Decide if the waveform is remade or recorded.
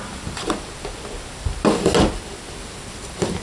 recorded